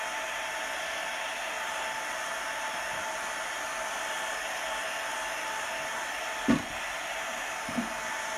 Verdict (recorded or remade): recorded